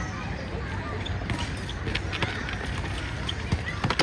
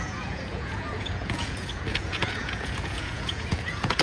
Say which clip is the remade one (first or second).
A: second